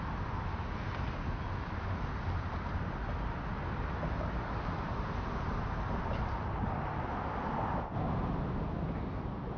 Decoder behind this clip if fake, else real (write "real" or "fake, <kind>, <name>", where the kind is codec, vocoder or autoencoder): real